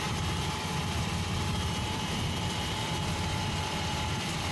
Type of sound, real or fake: fake